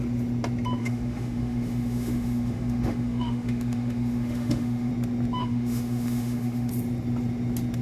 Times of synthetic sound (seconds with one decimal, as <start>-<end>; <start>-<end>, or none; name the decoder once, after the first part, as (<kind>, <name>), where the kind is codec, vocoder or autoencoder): 0.8-4.9 (autoencoder, DAC-VAE); 5.4-6.7